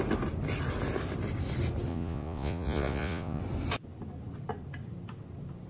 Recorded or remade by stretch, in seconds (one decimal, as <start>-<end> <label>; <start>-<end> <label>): 0.0-1.9 recorded; 1.9-3.4 remade; 3.4-5.7 recorded